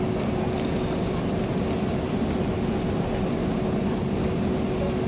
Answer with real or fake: real